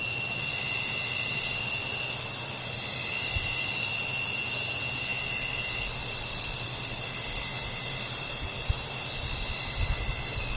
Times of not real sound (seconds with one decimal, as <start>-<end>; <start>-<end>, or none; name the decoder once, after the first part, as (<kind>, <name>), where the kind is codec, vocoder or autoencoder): none